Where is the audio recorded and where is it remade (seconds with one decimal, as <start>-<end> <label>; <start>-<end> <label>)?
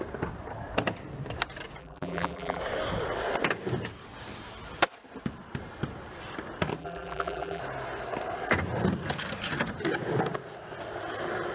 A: 0.0-1.8 recorded; 1.8-2.6 remade; 2.6-6.8 recorded; 6.8-7.6 remade; 7.6-11.5 recorded